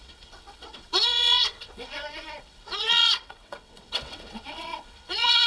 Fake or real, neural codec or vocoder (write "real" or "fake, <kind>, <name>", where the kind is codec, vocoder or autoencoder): fake, vocoder, WaveNeXt